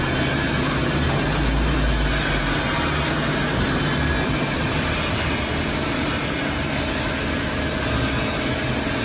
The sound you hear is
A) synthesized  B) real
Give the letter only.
B